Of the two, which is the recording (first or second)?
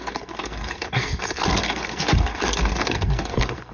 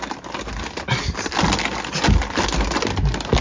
second